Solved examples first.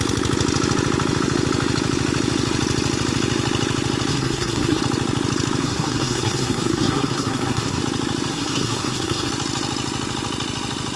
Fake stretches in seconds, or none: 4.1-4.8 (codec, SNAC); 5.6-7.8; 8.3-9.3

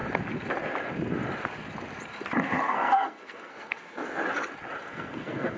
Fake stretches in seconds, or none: 2.7-4.2 (codec, SNAC); 4.8-5.6

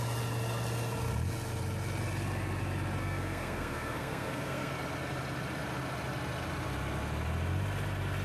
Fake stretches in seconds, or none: 3.0-4.7 (codec, SNAC)

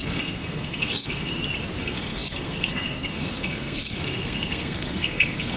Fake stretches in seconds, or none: 0.0-1.3 (codec, SNAC); 1.8-5.6

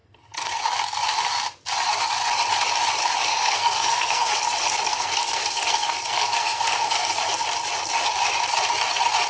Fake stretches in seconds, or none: 0.0-0.6 (codec, SNAC); 3.3-4.3; 4.9-7.2

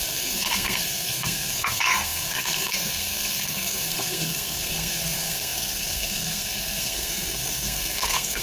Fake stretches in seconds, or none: 0.0-8.4 (codec, SNAC)

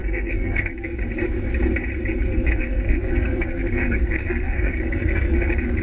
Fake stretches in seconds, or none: 0.0-1.0 (codec, SNAC); 2.3-5.8